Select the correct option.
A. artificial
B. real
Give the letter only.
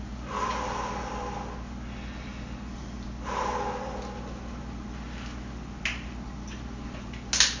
B